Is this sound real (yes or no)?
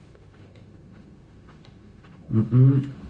no